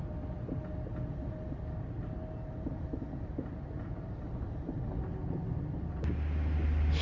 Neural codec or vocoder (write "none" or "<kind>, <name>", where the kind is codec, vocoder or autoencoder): none